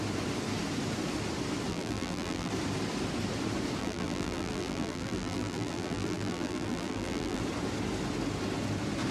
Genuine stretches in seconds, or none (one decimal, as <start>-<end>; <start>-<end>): 0.0-1.7; 2.5-3.8; 7.4-9.1